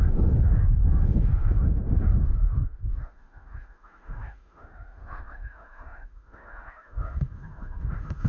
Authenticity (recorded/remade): remade